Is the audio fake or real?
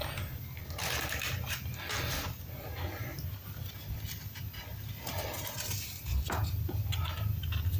real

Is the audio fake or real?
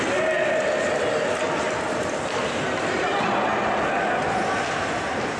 real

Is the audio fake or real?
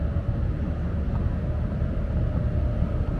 real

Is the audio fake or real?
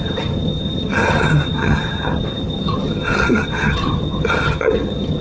fake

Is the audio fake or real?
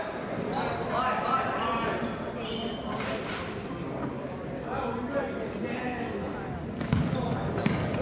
real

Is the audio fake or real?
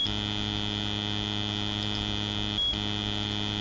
real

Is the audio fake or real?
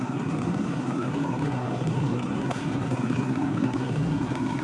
fake